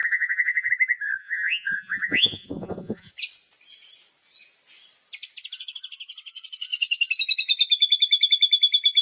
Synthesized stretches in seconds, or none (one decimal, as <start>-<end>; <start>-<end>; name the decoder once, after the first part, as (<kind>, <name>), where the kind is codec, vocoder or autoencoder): 0.0-0.7 (vocoder, Vocos); 1.2-3.1